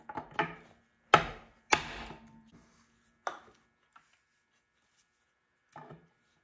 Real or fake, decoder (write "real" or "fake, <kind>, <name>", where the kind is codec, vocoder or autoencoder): real